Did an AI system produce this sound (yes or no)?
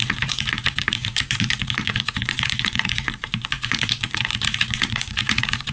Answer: yes